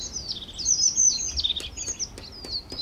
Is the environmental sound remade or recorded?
recorded